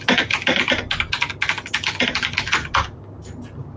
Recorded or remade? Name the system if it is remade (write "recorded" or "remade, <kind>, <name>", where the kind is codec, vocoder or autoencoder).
recorded